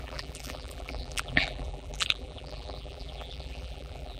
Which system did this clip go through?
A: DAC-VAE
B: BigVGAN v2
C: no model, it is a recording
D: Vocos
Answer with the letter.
B